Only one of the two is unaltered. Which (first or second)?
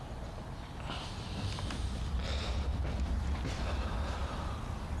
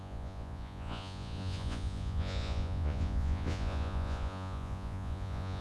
first